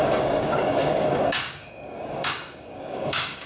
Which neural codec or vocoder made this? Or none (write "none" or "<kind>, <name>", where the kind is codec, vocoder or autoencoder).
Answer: codec, DAC